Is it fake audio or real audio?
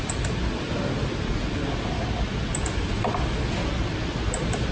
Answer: real